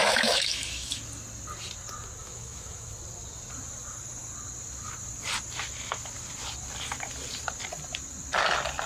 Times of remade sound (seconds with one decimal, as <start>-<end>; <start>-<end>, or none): 0.0-1.0; 2.2-2.9